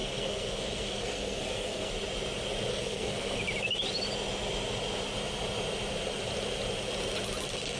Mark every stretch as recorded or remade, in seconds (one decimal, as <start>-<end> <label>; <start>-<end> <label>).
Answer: 0.0-1.9 remade; 1.9-2.7 recorded; 2.7-3.4 remade; 3.4-7.8 recorded